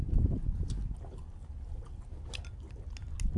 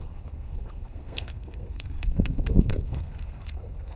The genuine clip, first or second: first